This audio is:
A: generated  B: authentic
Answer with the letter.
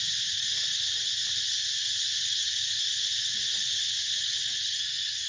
A